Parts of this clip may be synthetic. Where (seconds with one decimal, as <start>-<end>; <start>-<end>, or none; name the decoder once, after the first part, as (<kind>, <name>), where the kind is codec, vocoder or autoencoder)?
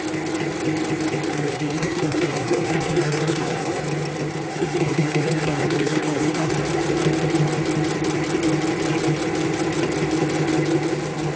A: 1.3-3.8 (codec, SNAC); 4.5-6.5